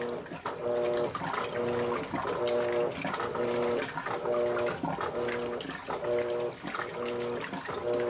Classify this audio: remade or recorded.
recorded